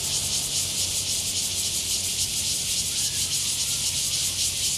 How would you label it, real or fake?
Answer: real